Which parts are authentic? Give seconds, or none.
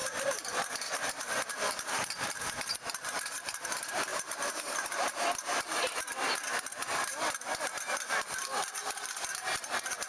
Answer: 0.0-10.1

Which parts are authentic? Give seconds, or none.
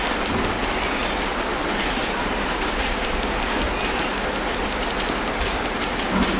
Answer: 0.0-6.4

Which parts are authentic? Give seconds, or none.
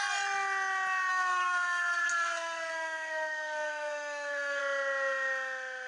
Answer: 0.0-1.1; 4.6-5.9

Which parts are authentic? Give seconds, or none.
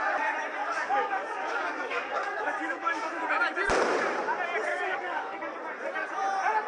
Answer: 0.0-0.6; 3.2-4.7; 5.6-6.7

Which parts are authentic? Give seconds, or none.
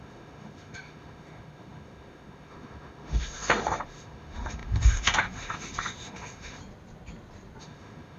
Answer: 6.6-7.6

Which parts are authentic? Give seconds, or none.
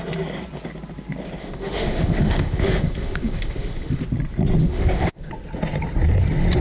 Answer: 0.0-1.4; 4.0-4.6; 5.3-6.6